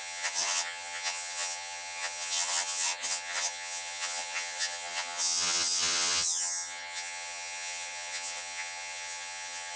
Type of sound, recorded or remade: remade